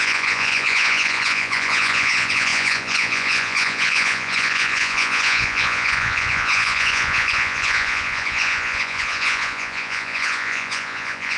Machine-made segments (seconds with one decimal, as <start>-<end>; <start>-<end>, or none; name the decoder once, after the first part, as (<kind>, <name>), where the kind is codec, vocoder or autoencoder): 0.0-11.4 (vocoder, Vocos)